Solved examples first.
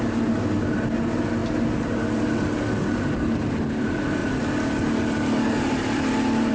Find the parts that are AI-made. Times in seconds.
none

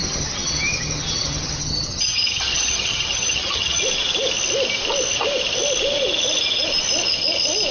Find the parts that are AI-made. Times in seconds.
0.0-3.8 (vocoder, HiFi-GAN)

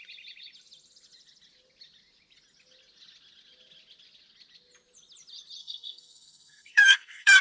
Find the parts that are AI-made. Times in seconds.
5.6-7.4 (codec, SNAC)

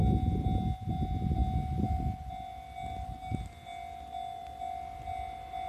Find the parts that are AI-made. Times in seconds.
none

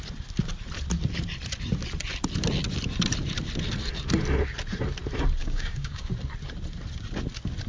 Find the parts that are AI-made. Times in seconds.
5.4-6.1 (codec, DAC)

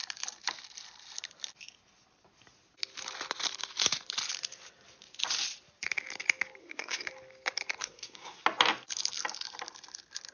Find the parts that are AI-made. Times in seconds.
6.6-7.1 (codec, SNAC); 7.8-8.4